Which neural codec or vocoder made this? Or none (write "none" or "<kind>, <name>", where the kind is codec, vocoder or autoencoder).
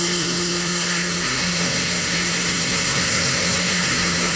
codec, SNAC